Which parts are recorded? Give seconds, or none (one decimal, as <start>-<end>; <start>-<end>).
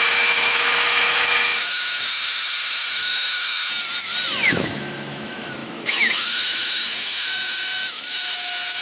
3.7-4.5